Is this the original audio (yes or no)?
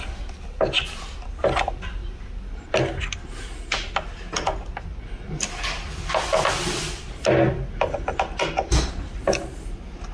yes